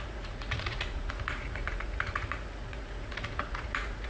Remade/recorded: remade